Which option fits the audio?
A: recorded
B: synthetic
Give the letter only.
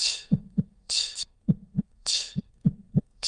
B